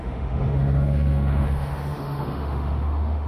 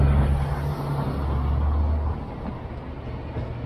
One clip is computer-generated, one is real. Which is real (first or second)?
second